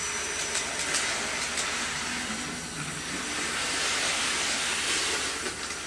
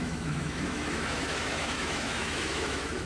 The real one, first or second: first